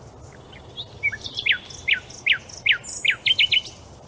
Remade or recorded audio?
recorded